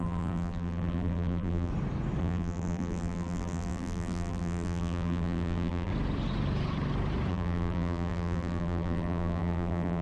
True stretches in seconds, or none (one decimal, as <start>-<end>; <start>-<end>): 1.7-2.2; 5.9-7.3